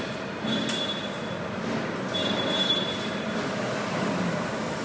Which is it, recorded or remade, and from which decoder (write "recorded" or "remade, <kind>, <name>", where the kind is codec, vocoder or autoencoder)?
recorded